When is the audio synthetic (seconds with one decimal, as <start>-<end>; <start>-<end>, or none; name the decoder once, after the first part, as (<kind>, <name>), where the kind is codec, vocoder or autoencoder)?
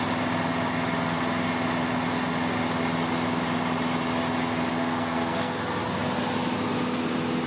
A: 4.8-5.6 (codec, SNAC)